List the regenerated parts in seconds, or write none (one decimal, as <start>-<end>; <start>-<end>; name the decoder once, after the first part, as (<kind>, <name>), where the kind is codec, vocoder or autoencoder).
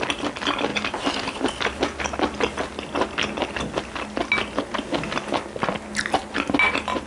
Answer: none